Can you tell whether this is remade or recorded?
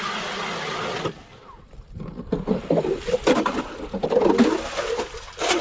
recorded